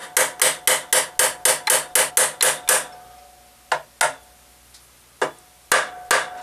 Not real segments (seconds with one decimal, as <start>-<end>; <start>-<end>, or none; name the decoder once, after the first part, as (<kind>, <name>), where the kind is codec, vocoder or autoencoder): none